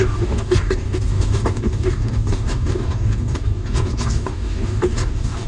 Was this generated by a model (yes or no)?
yes